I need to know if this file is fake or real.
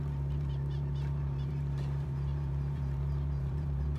fake